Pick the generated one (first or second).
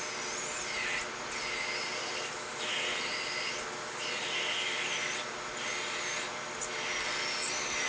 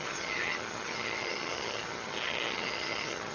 second